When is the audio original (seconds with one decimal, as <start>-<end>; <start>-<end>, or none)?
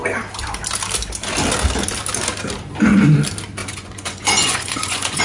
0.0-3.6